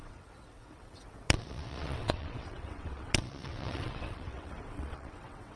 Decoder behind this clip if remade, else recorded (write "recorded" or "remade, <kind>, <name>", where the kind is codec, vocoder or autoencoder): remade, vocoder, WaveNeXt